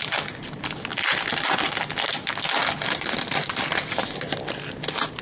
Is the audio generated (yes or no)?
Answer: no